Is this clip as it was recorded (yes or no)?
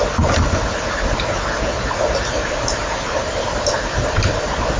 yes